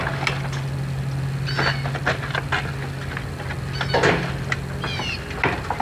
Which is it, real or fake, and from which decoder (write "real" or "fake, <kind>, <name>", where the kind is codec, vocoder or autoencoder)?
real